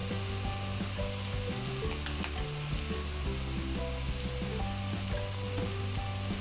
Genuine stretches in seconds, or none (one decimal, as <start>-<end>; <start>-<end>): 0.0-6.4